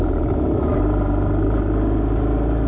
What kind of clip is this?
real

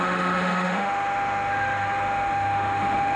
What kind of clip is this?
fake